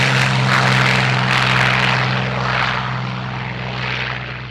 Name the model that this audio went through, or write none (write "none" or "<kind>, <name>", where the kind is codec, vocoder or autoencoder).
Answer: none